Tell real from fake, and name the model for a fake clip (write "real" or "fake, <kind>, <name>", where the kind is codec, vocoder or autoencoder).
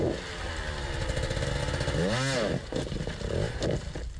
real